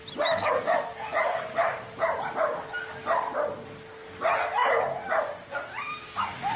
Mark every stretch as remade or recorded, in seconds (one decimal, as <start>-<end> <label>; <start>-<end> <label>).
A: 0.0-1.1 recorded; 1.1-2.3 remade; 2.3-6.6 recorded